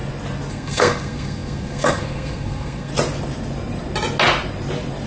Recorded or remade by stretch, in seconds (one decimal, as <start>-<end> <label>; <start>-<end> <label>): 0.0-0.5 recorded; 0.5-2.9 remade; 2.9-5.1 recorded